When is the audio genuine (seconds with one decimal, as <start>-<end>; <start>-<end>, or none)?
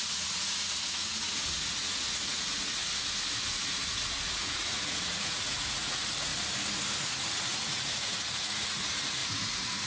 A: 2.8-3.4; 6.3-7.0